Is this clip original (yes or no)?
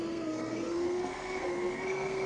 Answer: no